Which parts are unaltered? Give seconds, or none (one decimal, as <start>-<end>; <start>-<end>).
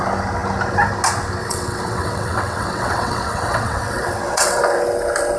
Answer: 0.0-1.4; 4.6-5.4